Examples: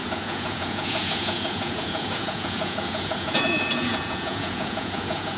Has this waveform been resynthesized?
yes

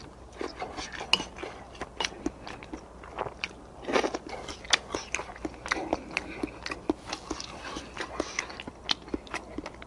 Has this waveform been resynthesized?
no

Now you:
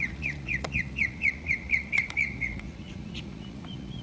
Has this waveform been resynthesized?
yes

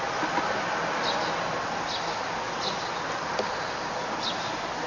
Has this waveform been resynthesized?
no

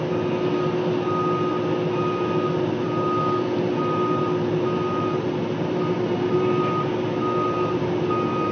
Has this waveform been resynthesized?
no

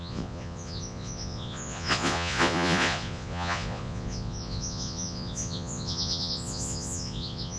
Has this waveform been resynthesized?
yes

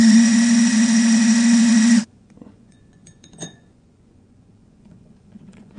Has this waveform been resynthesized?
yes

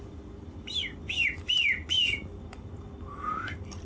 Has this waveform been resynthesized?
no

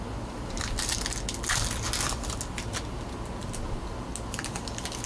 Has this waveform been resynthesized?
no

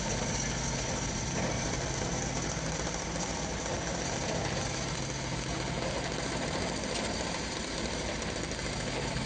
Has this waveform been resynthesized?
no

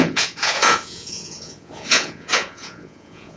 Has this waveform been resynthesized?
yes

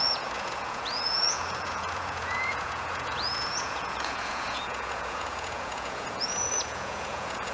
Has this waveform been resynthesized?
yes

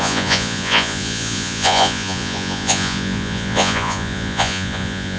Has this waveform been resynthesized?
yes